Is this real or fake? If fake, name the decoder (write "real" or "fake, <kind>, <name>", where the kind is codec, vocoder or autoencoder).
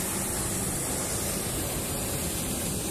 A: real